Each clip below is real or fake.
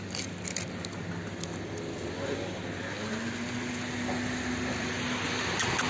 real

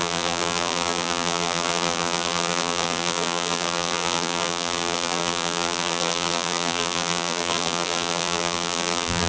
fake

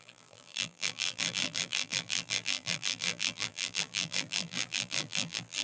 fake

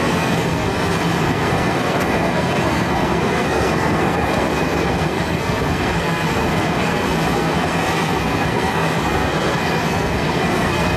fake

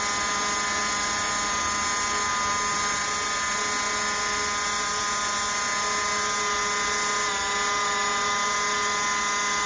real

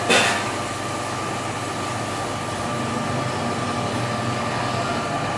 real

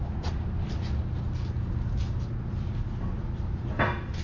real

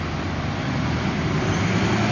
real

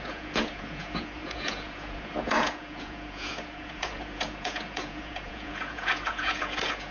fake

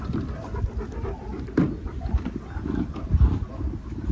fake